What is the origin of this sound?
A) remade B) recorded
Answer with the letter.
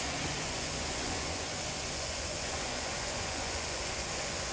A